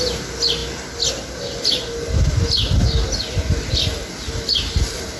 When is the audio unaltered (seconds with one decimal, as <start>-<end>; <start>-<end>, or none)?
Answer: 0.0-5.2